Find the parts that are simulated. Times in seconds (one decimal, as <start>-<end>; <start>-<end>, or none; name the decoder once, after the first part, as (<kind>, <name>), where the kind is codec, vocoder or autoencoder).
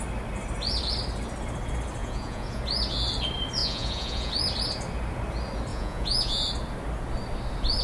2.0-2.6 (vocoder, Vocos); 3.6-4.3; 5.7-6.4